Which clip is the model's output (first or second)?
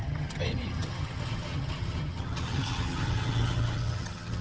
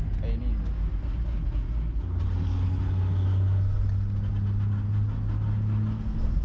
first